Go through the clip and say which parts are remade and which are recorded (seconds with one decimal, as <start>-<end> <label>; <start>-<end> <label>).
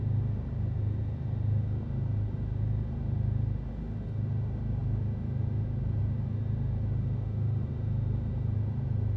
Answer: 0.0-9.2 recorded